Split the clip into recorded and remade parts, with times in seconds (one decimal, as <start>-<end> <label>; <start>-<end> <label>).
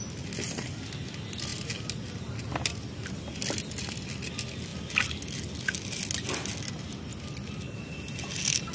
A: 0.0-8.7 recorded